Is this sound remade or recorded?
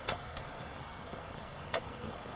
remade